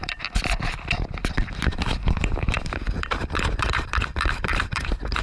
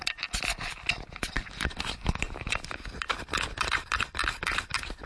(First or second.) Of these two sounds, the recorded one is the second